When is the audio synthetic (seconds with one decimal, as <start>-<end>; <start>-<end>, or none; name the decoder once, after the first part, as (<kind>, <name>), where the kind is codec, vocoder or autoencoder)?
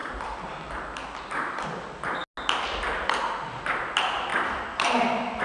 none